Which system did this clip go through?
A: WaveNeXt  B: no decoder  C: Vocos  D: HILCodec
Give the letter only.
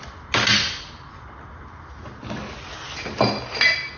B